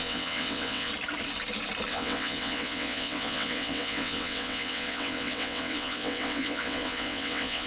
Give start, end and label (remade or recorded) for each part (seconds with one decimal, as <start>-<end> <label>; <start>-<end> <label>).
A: 0.0-0.9 remade; 0.9-1.9 recorded; 1.9-7.7 remade